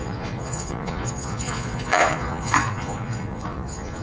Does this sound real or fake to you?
fake